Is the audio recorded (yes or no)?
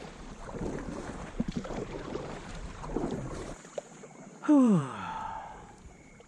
no